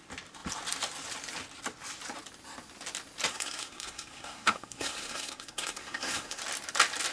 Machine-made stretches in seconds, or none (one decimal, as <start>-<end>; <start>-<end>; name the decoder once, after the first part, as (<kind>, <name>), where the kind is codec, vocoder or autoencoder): 3.3-6.4 (codec, SNAC)